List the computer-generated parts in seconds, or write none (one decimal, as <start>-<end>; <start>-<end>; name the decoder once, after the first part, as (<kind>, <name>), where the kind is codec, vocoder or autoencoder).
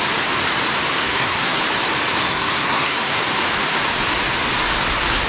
0.9-1.6 (codec, SNAC); 2.2-3.2